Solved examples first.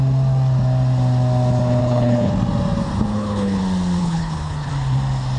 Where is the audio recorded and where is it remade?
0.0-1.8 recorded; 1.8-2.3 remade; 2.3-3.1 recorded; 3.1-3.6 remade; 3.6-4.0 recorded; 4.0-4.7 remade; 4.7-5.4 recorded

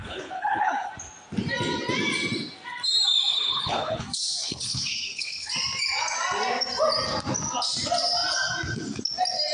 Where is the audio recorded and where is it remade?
0.0-0.9 remade; 0.9-3.3 recorded; 3.3-4.0 remade; 4.0-4.4 recorded; 4.4-5.5 remade; 5.5-9.5 recorded